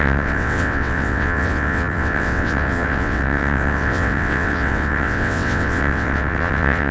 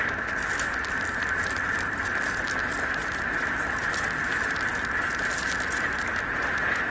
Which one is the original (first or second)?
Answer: second